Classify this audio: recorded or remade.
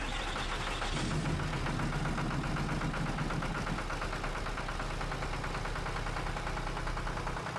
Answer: recorded